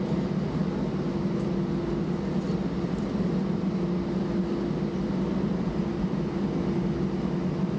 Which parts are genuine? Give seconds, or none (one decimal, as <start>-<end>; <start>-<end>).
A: 0.0-7.8